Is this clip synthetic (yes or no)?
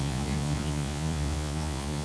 yes